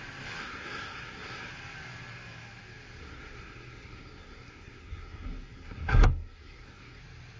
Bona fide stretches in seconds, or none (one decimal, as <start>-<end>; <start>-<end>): 0.0-0.4; 1.5-3.0; 7.0-7.4